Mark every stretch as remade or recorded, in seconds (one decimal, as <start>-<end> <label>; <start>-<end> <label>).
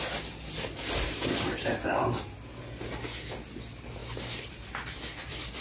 0.0-5.6 recorded